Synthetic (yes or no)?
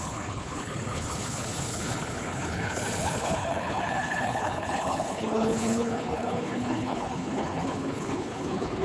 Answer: yes